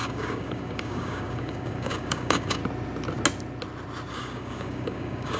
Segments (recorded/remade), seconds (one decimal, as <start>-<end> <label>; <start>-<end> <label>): 0.0-2.6 remade; 2.6-4.1 recorded; 4.1-5.4 remade

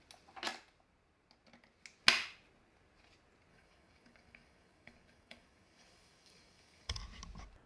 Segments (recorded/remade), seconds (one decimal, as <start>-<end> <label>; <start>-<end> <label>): 0.0-3.5 recorded; 3.5-7.0 remade; 7.0-7.7 recorded